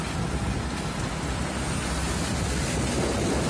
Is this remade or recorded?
recorded